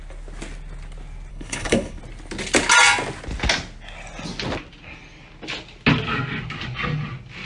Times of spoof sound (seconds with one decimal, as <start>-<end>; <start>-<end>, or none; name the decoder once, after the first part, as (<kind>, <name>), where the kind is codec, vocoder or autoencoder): 1.3-2.0 (codec, HILCodec)